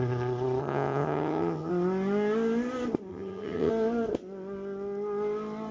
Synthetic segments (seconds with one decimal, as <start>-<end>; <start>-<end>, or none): 0.6-1.7; 3.1-3.7